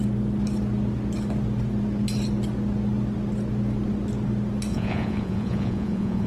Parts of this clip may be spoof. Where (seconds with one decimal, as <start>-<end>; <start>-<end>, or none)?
4.7-6.3